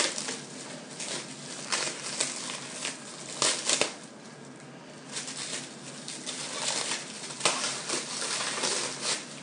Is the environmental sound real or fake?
real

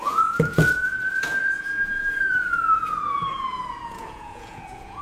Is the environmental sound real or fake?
fake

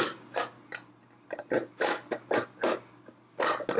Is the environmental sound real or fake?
real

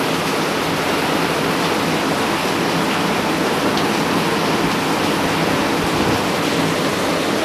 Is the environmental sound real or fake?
real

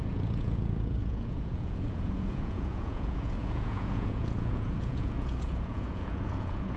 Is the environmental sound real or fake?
fake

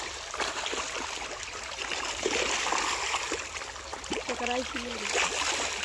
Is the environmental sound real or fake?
real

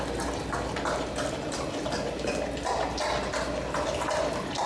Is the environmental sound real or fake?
real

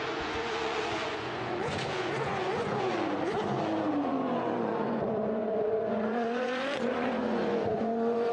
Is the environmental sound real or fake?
fake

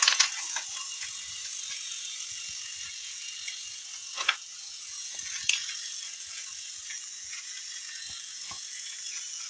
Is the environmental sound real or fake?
fake